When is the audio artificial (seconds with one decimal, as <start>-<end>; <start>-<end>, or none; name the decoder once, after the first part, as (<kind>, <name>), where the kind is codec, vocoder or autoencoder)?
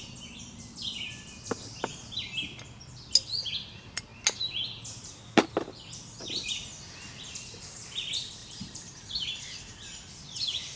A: 8.4-9.4 (vocoder, BigVGAN v2)